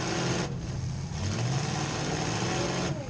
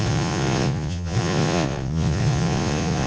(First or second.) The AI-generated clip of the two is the second